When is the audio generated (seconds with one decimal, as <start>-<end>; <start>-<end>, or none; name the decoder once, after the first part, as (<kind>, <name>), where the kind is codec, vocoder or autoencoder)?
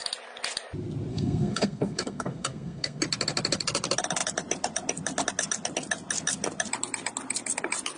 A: 1.1-3.0 (codec, SNAC)